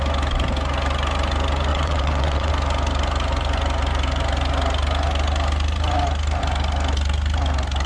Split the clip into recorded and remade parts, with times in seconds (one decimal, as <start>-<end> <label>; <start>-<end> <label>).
0.0-1.7 recorded; 1.7-2.5 remade; 2.5-7.9 recorded